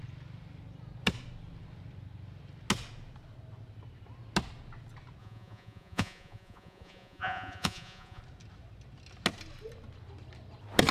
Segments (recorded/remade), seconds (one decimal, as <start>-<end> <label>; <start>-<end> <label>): 0.0-5.2 recorded; 5.2-8.2 remade; 8.2-10.9 recorded